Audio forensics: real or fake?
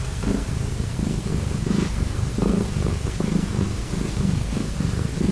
fake